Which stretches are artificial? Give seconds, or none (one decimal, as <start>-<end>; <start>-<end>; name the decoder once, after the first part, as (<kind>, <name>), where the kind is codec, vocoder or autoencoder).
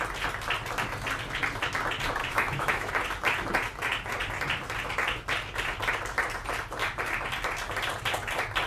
2.2-2.9 (autoencoder, DAC-VAE)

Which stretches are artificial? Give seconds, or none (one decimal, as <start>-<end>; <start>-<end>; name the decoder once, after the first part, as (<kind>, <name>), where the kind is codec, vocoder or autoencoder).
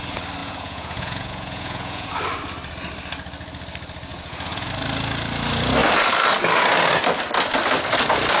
0.4-2.1 (vocoder, Vocos); 4.1-4.7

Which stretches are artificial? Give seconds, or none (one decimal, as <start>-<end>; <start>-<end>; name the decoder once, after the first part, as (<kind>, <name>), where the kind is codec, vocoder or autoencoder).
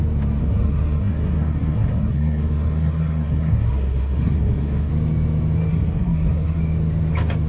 0.4-4.9 (codec, SNAC); 5.7-6.6